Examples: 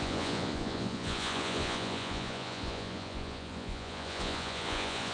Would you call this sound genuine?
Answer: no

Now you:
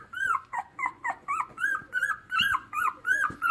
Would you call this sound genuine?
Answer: no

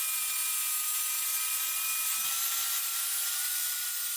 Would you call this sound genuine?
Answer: yes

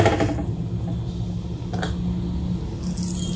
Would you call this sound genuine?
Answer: yes